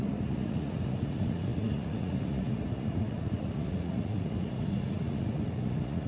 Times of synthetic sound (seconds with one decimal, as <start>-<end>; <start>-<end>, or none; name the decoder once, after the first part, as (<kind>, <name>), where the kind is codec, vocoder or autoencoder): 0.0-6.1 (vocoder, Vocos)